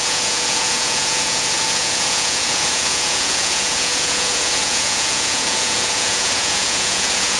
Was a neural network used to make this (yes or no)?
yes